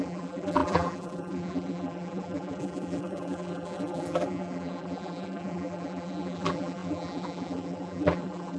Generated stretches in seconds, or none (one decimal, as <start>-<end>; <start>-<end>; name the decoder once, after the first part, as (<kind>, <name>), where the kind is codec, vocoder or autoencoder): 0.0-8.6 (vocoder, BigVGAN v2)